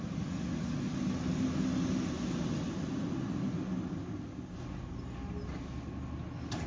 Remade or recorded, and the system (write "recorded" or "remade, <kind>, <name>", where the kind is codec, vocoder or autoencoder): recorded